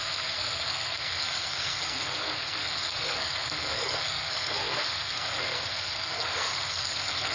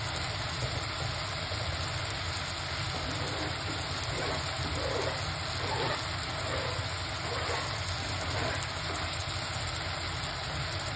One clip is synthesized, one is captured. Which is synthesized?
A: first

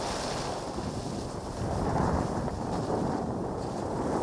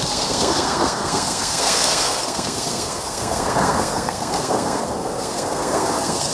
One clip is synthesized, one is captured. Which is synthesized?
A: second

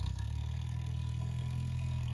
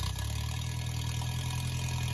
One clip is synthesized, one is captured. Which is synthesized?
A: first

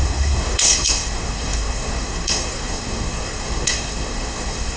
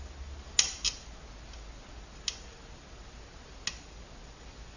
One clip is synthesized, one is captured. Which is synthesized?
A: first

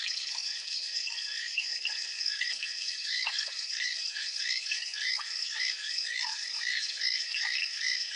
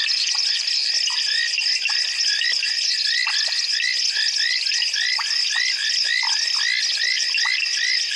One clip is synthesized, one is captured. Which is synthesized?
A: first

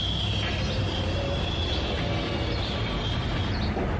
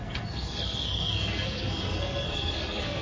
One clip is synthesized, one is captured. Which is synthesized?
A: second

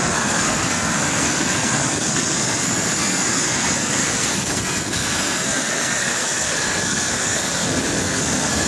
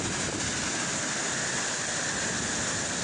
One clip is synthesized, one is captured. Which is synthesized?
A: first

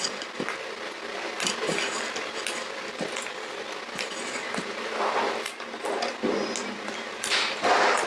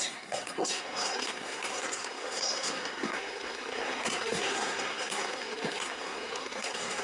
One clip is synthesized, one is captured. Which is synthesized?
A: second